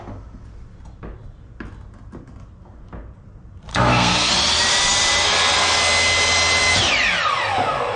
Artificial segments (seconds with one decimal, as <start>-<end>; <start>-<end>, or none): 3.7-4.3

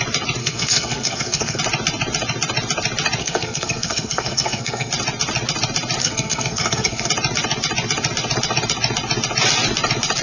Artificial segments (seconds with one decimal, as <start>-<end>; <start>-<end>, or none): 0.4-1.6; 3.2-4.9; 6.0-7.1

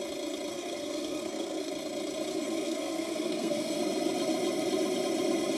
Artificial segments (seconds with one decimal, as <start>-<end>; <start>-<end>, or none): 0.5-1.7; 2.3-3.8